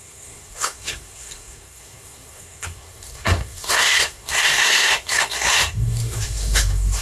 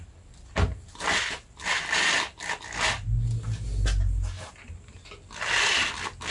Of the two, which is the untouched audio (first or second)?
second